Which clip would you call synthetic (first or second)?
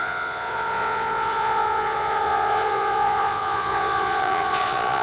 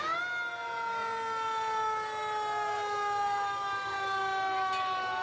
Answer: first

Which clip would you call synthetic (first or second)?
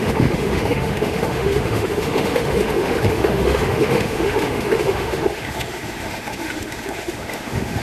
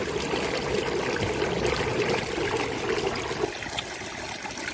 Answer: first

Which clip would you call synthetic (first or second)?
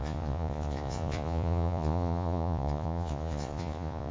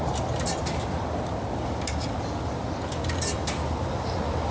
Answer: first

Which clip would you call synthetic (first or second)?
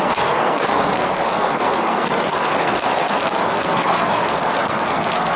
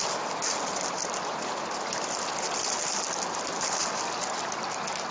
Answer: first